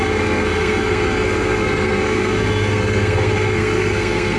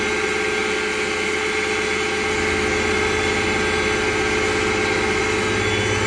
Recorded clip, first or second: second